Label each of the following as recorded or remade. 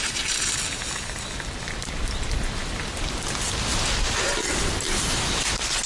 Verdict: recorded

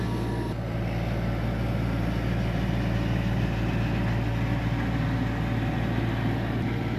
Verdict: recorded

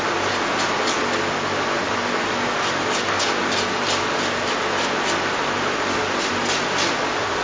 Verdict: recorded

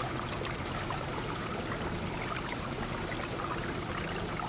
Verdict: recorded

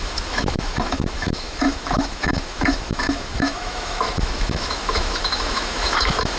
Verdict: remade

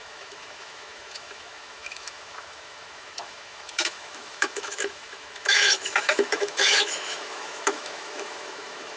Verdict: remade